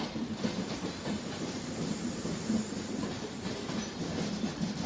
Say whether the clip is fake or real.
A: fake